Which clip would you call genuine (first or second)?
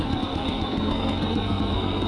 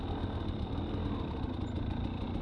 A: second